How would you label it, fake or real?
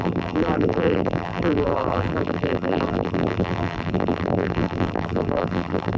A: fake